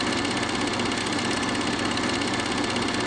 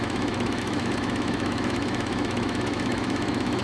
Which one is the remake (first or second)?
second